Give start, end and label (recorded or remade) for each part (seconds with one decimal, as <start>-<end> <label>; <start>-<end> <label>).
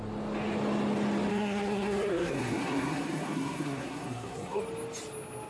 0.0-1.3 recorded; 1.3-4.6 remade; 4.6-5.5 recorded